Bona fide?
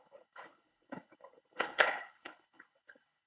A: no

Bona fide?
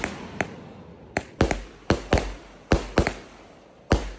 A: yes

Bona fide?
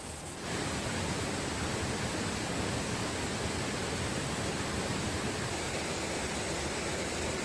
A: yes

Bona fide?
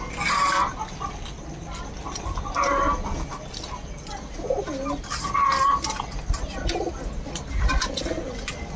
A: yes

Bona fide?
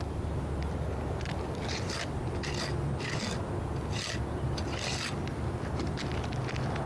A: yes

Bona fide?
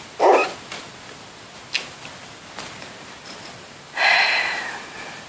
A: yes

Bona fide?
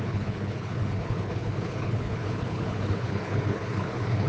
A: no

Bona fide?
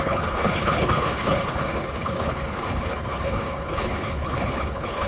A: no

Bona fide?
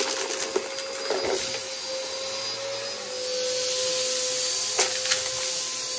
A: yes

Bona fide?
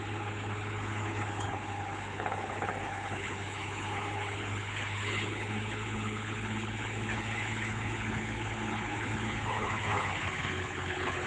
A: no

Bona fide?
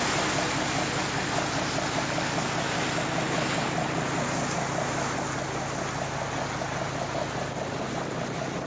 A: yes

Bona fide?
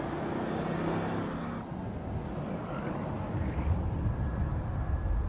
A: yes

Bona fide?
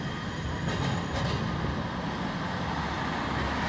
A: yes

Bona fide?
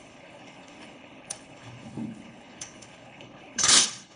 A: no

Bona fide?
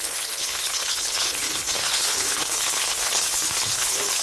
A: no